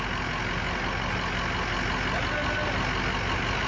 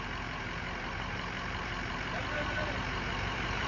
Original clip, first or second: first